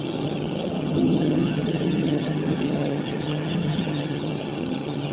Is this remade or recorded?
remade